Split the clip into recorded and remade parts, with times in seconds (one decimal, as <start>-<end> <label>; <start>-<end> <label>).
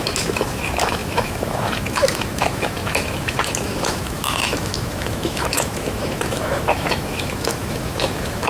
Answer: 0.0-8.5 remade